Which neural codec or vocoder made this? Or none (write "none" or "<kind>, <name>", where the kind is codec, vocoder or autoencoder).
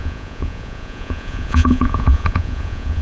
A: vocoder, Vocos